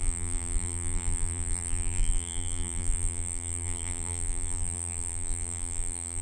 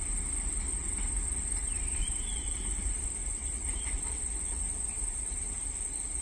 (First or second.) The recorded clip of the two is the second